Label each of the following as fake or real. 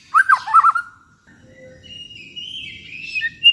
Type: real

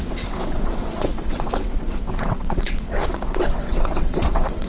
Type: fake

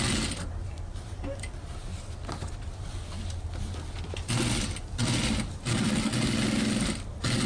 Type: real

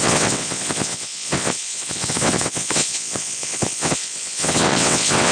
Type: fake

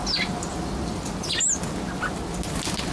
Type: real